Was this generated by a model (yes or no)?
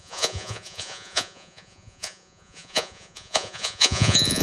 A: yes